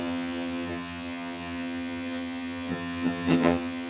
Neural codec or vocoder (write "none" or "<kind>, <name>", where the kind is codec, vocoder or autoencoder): vocoder, HiFi-GAN